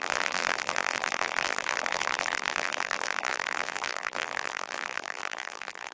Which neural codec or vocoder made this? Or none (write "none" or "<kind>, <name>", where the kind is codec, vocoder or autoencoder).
vocoder, BigVGAN v2